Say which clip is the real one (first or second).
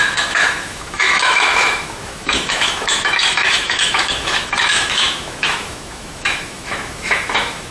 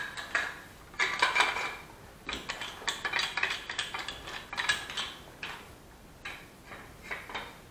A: second